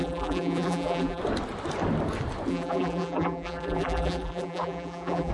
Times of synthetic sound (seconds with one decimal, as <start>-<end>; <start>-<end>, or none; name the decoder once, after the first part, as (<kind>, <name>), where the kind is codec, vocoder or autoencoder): 0.0-1.2 (vocoder, BigVGAN v2); 2.5-5.3